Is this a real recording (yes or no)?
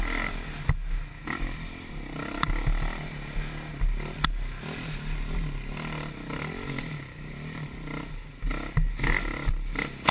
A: yes